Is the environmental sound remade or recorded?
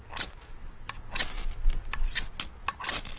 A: recorded